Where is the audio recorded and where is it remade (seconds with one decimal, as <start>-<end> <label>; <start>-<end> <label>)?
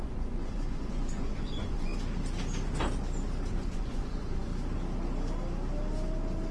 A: 0.0-1.9 remade; 1.9-3.5 recorded; 3.5-4.5 remade; 4.5-6.5 recorded